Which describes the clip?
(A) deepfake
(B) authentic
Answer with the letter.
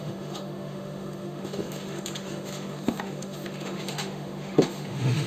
A